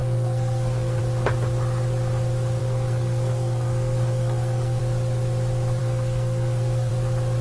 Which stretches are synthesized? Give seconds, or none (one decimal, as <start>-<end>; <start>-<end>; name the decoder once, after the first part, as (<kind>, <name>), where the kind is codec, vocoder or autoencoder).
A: 0.0-1.0 (codec, SNAC); 2.6-4.8; 5.8-6.9